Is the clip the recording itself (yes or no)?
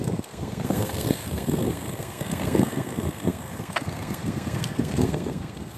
no